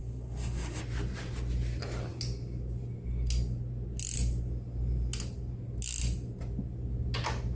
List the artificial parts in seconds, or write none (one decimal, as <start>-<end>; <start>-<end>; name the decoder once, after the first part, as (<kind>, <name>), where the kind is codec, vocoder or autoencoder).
0.0-0.8 (codec, SNAC)